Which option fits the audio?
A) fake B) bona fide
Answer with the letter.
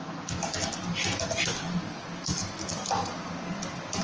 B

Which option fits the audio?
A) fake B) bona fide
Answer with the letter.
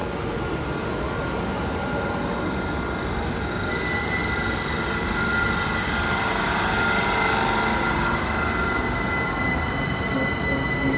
B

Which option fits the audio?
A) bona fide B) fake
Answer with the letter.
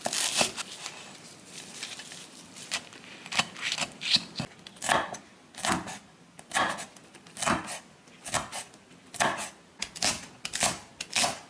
A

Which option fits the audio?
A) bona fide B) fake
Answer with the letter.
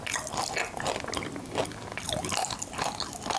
A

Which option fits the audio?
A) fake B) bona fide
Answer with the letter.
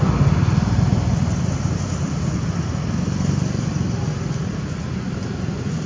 B